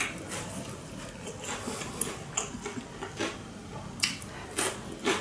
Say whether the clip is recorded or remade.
recorded